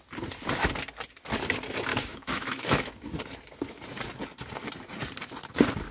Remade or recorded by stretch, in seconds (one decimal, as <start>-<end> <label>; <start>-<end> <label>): 0.0-1.9 recorded; 1.9-2.9 remade; 2.9-5.9 recorded